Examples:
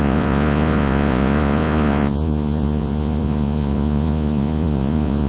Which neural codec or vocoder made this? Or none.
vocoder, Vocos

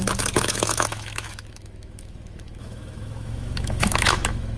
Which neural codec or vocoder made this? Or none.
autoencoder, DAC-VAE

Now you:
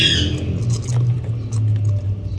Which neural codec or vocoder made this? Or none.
none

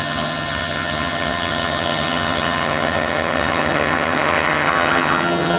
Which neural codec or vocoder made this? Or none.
vocoder, HiFi-GAN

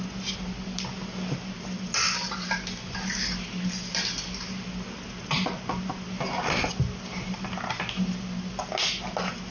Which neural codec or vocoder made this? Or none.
none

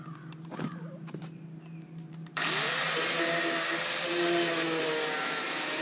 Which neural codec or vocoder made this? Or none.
vocoder, BigVGAN v2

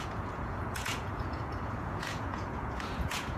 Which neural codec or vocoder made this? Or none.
vocoder, Vocos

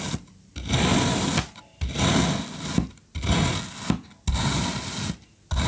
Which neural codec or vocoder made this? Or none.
none